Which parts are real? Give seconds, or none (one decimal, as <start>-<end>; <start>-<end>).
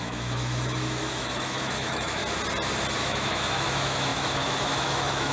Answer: 2.2-3.0